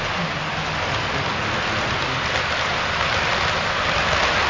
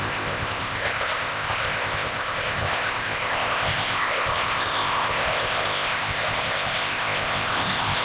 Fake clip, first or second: second